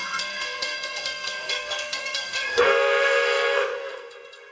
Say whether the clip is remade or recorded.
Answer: remade